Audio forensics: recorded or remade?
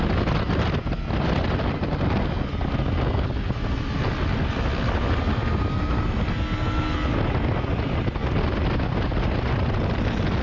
recorded